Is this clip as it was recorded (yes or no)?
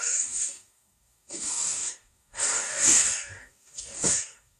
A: no